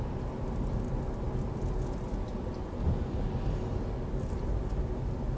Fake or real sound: real